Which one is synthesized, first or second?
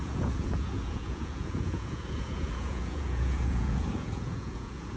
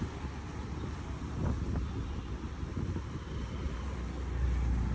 first